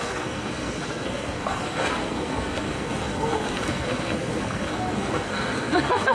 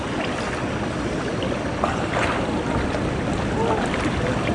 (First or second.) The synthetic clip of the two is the first